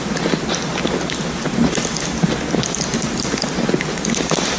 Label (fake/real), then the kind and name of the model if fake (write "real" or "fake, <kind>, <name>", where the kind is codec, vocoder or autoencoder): real